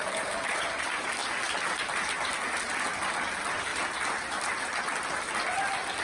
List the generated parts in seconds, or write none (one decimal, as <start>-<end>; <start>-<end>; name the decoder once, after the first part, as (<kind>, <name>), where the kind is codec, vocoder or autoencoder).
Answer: none